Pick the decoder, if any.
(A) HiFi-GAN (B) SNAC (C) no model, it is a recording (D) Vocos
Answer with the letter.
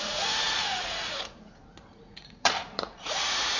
D